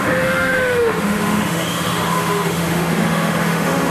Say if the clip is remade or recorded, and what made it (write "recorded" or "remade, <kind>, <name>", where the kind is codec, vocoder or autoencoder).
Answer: remade, autoencoder, DAC-VAE